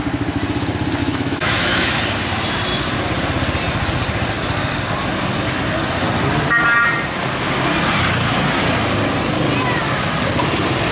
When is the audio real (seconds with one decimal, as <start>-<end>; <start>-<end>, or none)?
0.0-1.0; 2.0-10.9